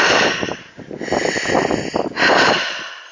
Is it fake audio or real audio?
real